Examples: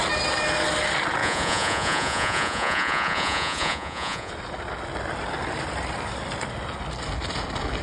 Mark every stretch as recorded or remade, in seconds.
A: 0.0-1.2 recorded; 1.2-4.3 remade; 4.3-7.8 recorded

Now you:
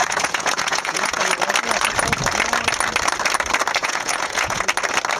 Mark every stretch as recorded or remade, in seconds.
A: 0.0-1.3 remade; 1.3-3.8 recorded; 3.8-4.6 remade; 4.6-5.2 recorded